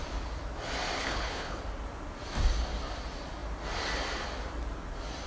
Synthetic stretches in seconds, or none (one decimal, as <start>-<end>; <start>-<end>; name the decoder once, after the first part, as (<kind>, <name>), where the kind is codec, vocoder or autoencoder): 1.0-1.6 (codec, HILCodec)